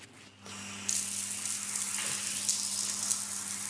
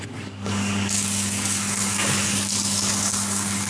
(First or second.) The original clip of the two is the first